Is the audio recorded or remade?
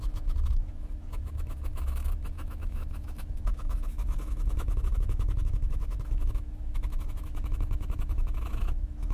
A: remade